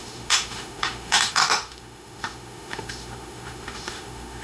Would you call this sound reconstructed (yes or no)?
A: yes